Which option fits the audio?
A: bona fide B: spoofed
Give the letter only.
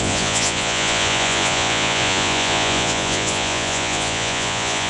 B